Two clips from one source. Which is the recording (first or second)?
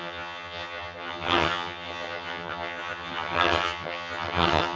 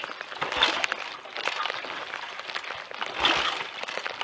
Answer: second